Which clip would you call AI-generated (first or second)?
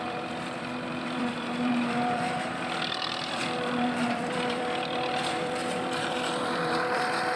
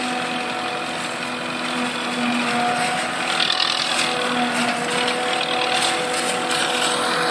first